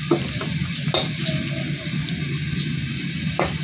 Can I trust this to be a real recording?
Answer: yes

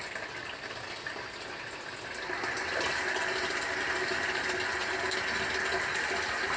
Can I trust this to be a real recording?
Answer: yes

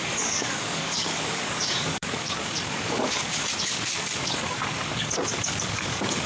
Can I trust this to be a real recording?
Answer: no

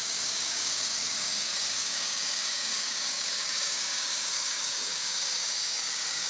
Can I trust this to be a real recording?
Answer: no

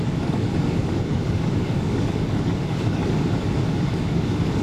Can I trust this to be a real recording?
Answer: no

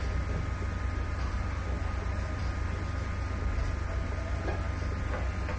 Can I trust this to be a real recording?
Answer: yes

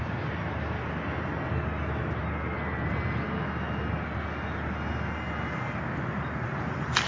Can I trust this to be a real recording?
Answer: yes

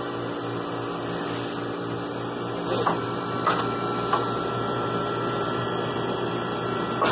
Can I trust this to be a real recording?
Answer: yes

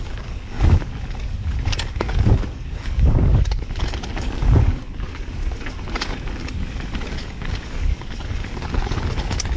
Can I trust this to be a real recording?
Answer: no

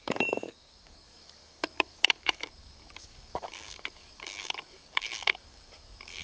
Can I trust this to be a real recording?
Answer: no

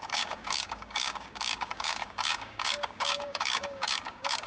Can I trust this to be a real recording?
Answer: no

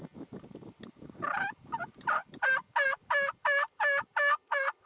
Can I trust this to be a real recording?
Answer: yes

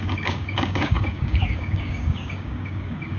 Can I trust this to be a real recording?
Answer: no